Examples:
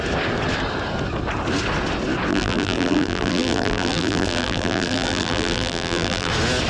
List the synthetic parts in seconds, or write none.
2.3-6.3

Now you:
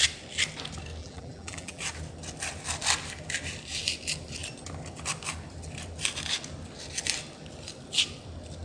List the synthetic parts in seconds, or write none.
1.0-1.8

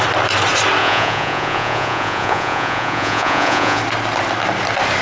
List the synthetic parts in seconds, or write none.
0.8-3.8

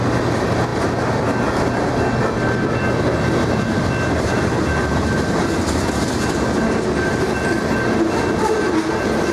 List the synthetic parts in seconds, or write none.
none

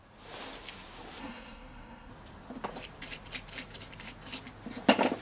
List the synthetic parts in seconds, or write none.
1.2-2.1

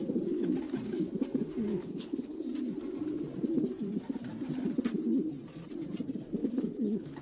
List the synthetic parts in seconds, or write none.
1.7-2.4; 6.4-7.2

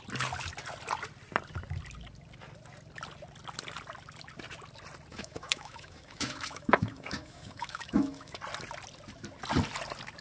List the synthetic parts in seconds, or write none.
5.1-8.4

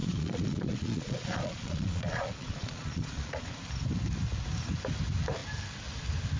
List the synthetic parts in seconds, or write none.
0.0-3.6